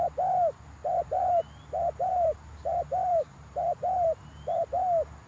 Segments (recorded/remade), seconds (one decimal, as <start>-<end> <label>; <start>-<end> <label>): 0.0-0.8 recorded; 0.8-1.4 remade; 1.4-2.1 recorded; 2.1-4.7 remade; 4.7-5.3 recorded